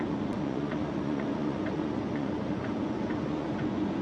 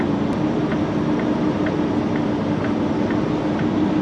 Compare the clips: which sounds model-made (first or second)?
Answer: first